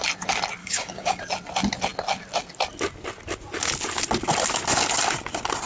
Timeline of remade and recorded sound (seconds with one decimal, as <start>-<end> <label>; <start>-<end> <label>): 0.0-0.6 recorded; 0.6-1.2 remade; 1.2-5.7 recorded